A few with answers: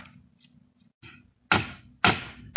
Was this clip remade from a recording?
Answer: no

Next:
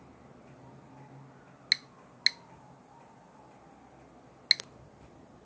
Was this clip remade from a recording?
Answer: no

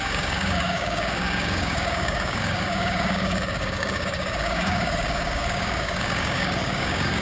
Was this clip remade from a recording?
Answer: yes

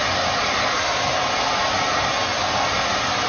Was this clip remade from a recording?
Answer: no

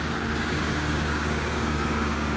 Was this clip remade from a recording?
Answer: yes